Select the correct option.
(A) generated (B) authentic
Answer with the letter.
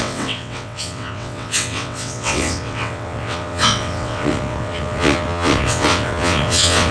A